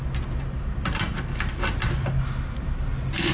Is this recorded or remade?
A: recorded